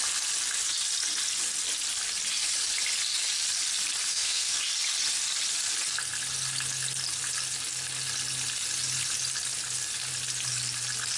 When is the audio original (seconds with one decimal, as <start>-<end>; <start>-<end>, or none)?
0.0-4.1; 4.6-11.2

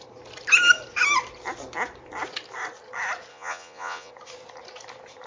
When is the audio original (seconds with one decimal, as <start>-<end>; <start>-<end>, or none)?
0.0-3.3; 4.1-5.3

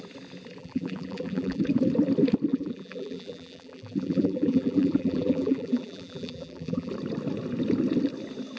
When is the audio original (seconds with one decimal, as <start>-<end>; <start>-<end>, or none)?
0.0-0.6; 1.6-2.5; 6.9-8.6